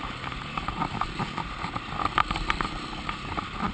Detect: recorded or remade recorded